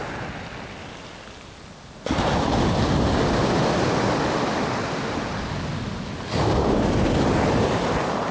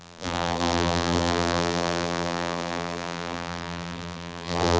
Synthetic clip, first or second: second